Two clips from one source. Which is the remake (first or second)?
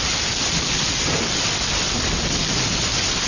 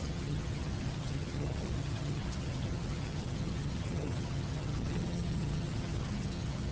second